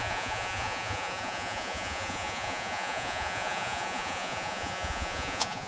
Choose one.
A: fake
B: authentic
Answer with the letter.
A